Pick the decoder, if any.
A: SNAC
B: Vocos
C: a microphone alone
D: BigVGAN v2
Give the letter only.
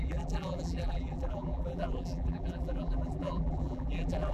D